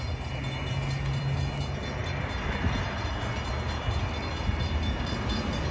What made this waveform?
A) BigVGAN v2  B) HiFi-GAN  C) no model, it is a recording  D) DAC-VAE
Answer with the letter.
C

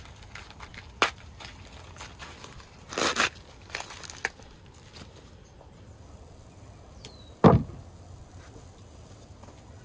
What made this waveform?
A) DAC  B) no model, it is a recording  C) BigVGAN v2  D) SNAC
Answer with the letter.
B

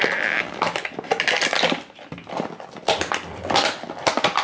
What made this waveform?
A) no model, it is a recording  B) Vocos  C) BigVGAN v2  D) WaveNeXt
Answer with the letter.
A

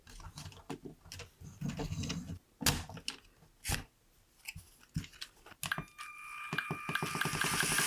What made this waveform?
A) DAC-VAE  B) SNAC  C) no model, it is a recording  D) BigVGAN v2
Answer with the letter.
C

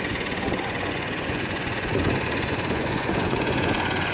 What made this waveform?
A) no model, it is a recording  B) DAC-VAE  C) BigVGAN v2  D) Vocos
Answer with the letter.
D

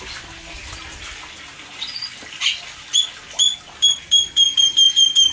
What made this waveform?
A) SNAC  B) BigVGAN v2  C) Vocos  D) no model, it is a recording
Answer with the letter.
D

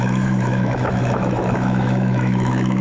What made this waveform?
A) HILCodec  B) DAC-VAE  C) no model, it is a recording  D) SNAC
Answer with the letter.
B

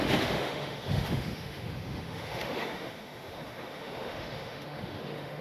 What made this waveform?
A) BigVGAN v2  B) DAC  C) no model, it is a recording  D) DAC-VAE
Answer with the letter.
D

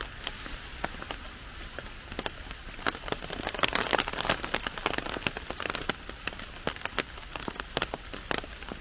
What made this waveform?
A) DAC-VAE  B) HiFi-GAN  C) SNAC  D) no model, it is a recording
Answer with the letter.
D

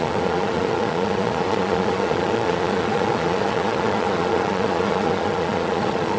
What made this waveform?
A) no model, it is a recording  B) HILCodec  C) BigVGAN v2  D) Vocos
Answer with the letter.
D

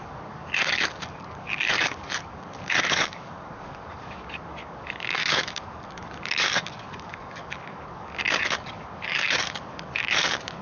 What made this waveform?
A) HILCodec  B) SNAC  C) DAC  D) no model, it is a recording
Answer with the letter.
C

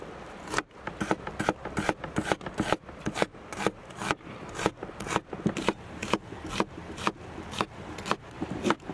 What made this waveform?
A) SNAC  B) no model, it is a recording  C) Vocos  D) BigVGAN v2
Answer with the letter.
B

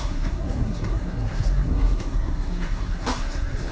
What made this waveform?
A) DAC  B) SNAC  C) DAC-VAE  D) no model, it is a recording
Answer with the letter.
B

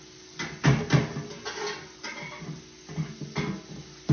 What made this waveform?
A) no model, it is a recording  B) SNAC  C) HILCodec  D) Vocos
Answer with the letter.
A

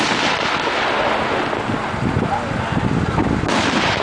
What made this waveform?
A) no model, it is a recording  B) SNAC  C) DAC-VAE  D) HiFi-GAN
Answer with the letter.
A